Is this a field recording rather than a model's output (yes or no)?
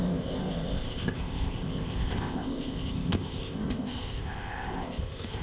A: no